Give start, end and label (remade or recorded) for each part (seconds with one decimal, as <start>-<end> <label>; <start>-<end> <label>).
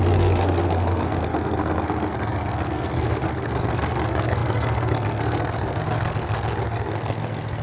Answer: 0.0-7.6 remade